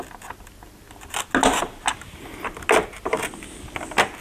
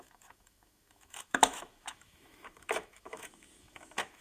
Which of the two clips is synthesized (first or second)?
second